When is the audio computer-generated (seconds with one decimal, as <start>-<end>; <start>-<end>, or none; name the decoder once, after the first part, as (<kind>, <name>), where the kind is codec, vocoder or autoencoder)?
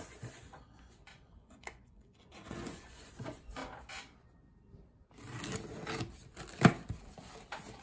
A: 0.0-3.6 (vocoder, Vocos)